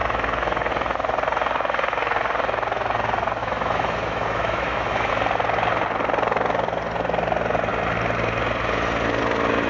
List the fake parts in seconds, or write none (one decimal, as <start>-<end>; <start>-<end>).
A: 0.0-0.7; 3.4-5.1